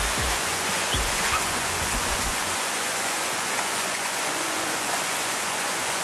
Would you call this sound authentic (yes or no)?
no